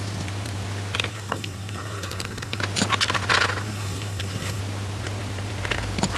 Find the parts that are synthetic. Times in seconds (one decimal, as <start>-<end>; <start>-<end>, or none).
1.1-2.6; 3.6-4.6